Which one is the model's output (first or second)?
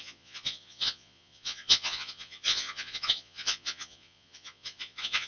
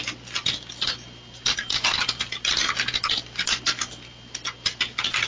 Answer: first